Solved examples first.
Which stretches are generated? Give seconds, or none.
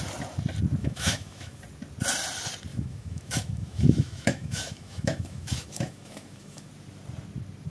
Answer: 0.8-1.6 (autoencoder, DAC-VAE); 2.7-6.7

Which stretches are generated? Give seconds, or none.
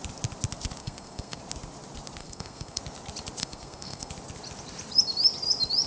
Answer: 0.8-1.4 (codec, SNAC); 2.2-2.8; 3.4-4.1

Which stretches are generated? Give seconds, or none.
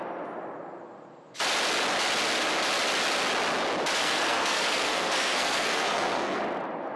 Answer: 4.0-6.4 (codec, SNAC)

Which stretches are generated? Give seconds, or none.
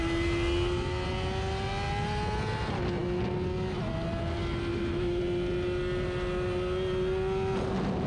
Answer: 4.7-5.2 (autoencoder, DAC-VAE)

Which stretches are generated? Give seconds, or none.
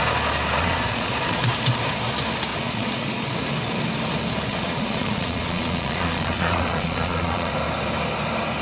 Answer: 0.6-1.4 (vocoder, Vocos); 2.5-3.3; 4.5-7.5